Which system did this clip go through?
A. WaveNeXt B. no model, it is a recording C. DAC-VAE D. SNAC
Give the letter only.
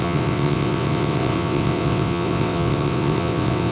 A